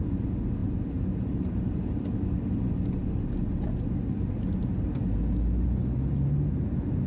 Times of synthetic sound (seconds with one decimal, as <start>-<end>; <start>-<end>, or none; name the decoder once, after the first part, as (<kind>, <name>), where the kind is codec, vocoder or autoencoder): none

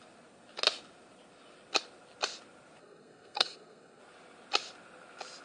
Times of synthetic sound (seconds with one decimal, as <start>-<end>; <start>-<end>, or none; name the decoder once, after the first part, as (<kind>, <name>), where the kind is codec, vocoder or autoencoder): 2.8-4.0 (codec, SNAC)